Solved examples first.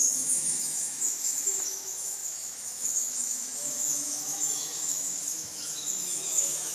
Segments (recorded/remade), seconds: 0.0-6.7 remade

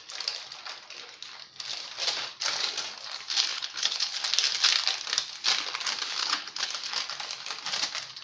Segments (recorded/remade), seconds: 0.0-3.5 recorded; 3.5-4.2 remade; 4.2-6.2 recorded; 6.2-6.7 remade; 6.7-8.2 recorded

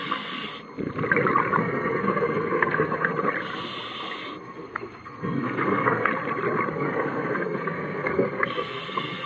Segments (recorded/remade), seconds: 0.0-0.5 remade; 0.5-1.6 recorded; 1.6-3.1 remade; 3.1-4.4 recorded; 4.4-6.1 remade; 6.1-6.7 recorded; 6.7-9.3 remade

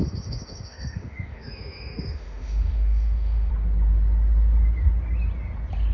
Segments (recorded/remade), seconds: 0.0-3.5 remade; 3.5-5.9 recorded

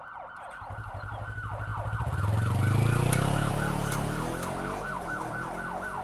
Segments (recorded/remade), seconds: 0.0-6.0 recorded

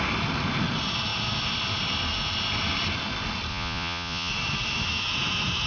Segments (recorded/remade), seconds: 0.0-3.5 recorded; 3.5-4.3 remade; 4.3-5.7 recorded